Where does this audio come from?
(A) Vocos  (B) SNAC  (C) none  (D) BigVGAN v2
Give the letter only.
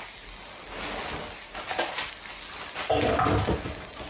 C